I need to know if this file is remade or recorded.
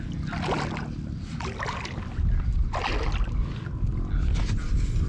recorded